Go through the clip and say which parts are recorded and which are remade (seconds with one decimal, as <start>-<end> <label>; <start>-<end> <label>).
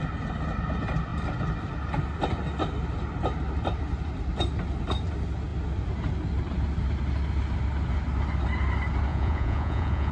0.0-9.1 recorded; 9.1-10.1 remade